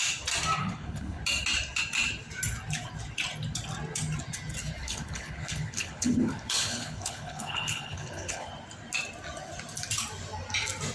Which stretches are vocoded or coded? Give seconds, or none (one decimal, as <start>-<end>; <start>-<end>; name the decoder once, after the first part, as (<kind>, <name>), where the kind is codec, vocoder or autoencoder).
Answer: 0.6-1.2 (codec, HILCodec); 4.8-8.5